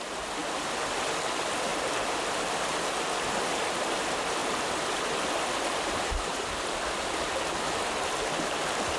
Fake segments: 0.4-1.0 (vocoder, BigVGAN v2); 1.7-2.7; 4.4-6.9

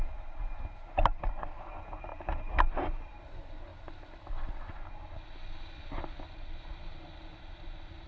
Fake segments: 2.1-3.2 (vocoder, BigVGAN v2)

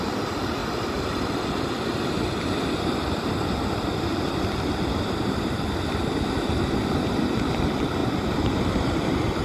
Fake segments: 8.0-9.4 (vocoder, BigVGAN v2)

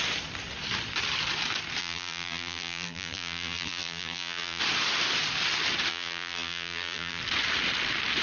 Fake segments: 1.8-4.6 (vocoder, BigVGAN v2); 5.9-7.2

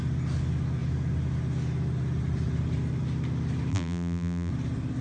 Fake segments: 3.7-4.5 (vocoder, BigVGAN v2)

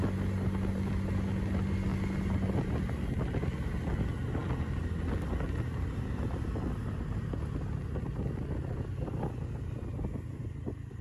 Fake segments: none